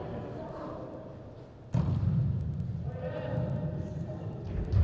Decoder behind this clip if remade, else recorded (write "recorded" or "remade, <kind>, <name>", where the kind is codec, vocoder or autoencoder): recorded